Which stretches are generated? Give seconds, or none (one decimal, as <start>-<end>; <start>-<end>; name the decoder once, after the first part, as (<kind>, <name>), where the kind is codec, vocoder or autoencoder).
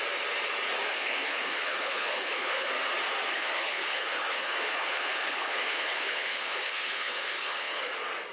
0.9-2.7 (codec, HILCodec); 3.3-7.9